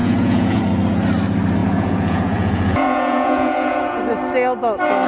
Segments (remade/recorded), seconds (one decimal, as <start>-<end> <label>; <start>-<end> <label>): 0.0-0.6 remade; 0.6-1.6 recorded; 1.6-4.0 remade; 4.0-5.1 recorded